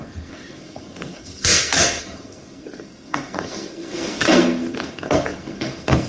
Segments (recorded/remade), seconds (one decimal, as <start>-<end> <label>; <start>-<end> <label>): 0.0-6.1 remade